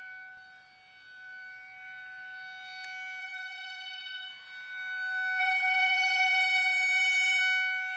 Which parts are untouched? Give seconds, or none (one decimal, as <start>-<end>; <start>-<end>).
0.0-3.2; 4.3-5.4; 7.4-8.0